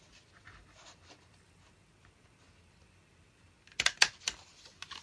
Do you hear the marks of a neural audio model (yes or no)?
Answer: no